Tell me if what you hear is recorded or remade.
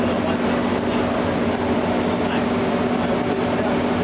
recorded